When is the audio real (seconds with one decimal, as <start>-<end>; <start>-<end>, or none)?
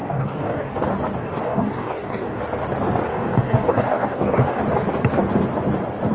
0.7-1.2; 2.4-3.1; 4.6-6.1